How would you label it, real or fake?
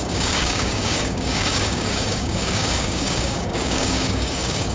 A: fake